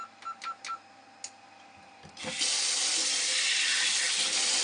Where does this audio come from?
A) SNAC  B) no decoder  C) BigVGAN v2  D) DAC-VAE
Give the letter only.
B